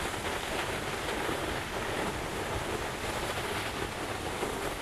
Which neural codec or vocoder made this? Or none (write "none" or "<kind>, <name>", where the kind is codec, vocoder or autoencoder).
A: none